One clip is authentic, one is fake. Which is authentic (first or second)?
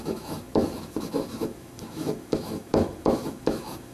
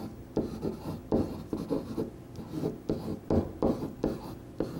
second